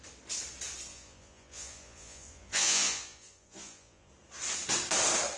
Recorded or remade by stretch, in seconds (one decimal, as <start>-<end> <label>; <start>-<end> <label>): 0.0-0.9 recorded; 0.9-4.1 remade; 4.1-5.4 recorded